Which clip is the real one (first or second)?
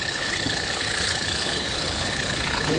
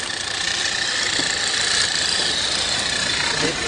second